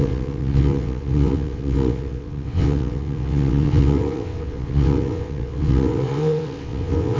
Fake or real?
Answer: fake